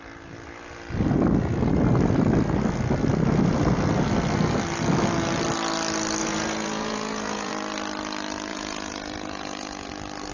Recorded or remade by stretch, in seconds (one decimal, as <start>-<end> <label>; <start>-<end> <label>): 0.0-6.2 recorded; 6.2-7.5 remade; 7.5-8.5 recorded; 8.5-9.9 remade; 9.9-10.3 recorded